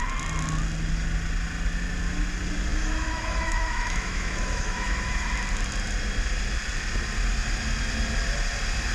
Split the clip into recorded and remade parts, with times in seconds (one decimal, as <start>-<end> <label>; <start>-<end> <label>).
0.0-2.7 recorded; 2.7-5.3 remade; 5.3-8.9 recorded